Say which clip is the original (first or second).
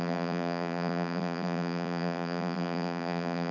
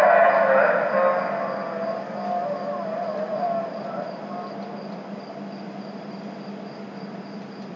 second